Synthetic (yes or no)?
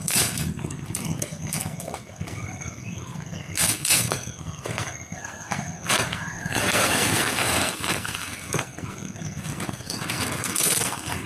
yes